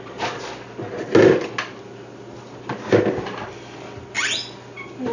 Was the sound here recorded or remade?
recorded